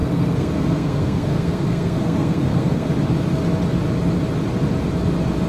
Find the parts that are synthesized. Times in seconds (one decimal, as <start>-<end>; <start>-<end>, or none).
0.0-2.9